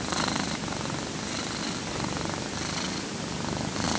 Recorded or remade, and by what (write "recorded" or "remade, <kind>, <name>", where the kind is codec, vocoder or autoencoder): recorded